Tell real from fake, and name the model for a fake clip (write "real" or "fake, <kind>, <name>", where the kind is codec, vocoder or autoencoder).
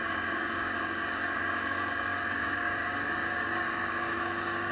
fake, codec, DAC